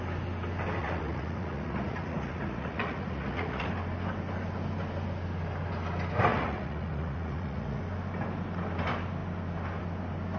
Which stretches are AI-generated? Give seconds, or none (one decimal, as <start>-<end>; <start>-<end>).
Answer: 0.8-3.7; 6.3-7.8